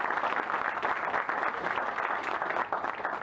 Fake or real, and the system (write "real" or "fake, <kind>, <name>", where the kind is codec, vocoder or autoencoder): real